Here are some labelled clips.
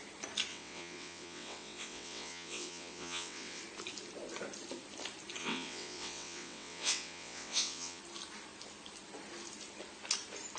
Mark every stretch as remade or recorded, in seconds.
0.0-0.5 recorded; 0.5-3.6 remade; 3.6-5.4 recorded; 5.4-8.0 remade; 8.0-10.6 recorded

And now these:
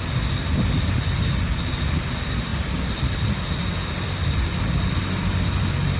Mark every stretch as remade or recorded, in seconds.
0.0-2.5 recorded; 2.5-3.4 remade; 3.4-6.0 recorded

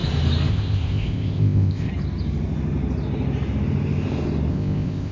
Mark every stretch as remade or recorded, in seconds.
0.0-0.5 recorded; 0.5-1.9 remade; 1.9-4.5 recorded; 4.5-5.1 remade

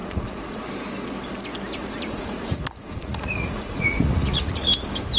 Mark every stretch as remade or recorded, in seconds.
0.0-0.6 remade; 0.6-1.7 recorded; 1.7-4.7 remade; 4.7-5.2 recorded